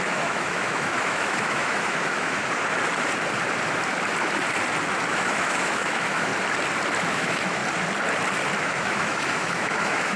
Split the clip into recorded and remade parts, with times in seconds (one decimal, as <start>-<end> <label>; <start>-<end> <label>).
0.0-2.4 remade; 2.4-5.1 recorded; 5.1-6.3 remade; 6.3-7.1 recorded; 7.1-7.6 remade; 7.6-8.7 recorded; 8.7-10.2 remade